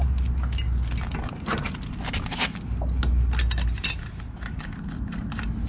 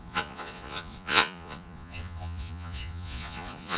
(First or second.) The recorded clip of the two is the first